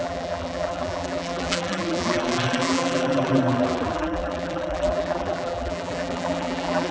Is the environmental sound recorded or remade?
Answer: remade